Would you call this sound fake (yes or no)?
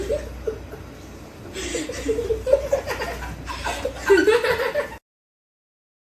no